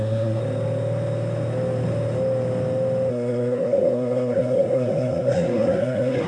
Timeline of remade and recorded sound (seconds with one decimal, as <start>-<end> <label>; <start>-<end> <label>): 0.0-0.4 remade; 0.4-3.1 recorded; 3.1-6.3 remade